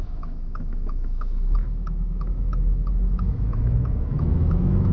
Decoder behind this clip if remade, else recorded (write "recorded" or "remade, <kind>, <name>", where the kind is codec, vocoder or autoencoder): remade, autoencoder, DAC-VAE